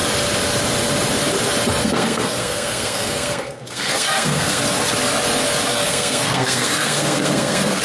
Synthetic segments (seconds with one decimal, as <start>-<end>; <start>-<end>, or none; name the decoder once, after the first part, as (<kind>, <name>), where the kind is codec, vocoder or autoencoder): 1.8-4.6 (codec, SNAC); 5.7-7.8